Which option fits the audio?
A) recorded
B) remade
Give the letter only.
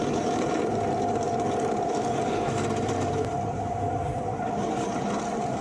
B